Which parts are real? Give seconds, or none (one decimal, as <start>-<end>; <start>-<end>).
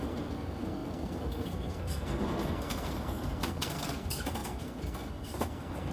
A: none